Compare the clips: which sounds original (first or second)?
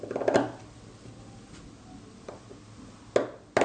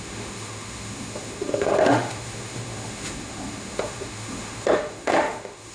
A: first